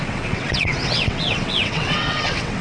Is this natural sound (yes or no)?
no